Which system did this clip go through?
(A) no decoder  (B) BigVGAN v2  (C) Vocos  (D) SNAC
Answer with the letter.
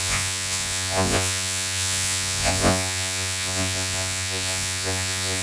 C